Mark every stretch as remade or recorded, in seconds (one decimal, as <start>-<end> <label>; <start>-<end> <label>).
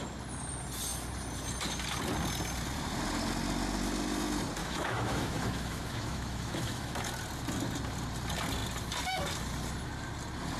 0.0-4.6 recorded; 4.6-7.1 remade; 7.1-10.6 recorded